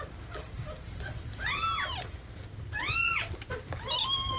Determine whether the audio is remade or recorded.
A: recorded